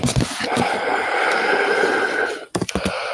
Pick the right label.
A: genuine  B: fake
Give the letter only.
A